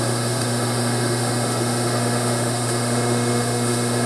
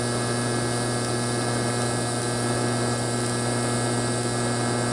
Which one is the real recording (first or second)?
second